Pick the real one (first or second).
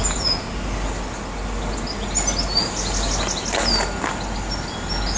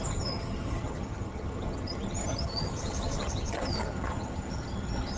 first